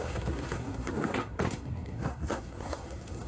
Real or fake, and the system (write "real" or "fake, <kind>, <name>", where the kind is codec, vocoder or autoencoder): fake, codec, SNAC